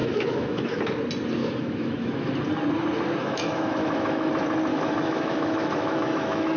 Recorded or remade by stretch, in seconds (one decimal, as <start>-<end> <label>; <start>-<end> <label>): 0.0-0.8 remade; 0.8-1.4 recorded; 1.4-2.3 remade; 2.3-3.2 recorded; 3.2-4.3 remade; 4.3-4.7 recorded; 4.7-6.6 remade